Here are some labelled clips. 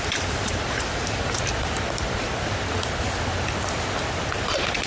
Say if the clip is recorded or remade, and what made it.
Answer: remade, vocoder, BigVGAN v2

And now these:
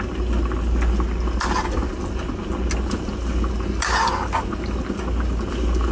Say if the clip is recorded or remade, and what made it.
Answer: recorded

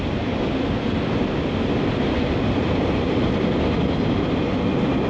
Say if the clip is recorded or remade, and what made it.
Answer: recorded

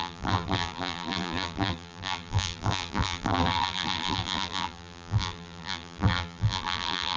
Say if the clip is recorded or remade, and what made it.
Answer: remade, vocoder, BigVGAN v2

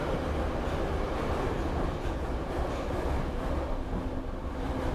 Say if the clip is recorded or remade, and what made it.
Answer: recorded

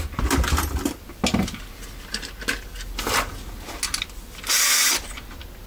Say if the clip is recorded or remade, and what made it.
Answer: recorded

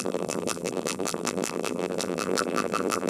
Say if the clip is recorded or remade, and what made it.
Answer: remade, vocoder, BigVGAN v2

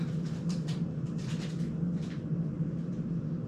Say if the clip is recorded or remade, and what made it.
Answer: remade, vocoder, BigVGAN v2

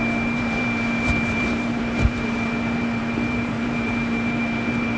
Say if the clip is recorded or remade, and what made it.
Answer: remade, vocoder, BigVGAN v2